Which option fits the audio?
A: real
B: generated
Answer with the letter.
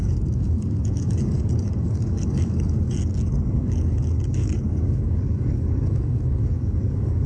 B